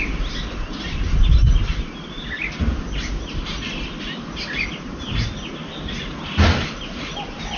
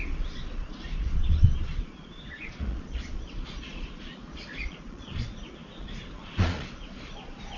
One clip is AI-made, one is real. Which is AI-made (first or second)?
second